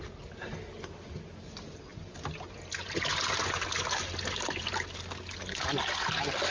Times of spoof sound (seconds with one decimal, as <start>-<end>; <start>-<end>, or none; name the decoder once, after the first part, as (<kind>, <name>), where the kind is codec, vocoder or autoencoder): none